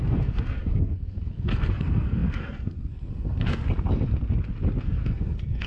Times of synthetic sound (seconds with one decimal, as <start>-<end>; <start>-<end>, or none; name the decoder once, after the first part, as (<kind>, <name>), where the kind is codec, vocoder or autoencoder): 0.0-3.6 (codec, SNAC); 4.8-5.7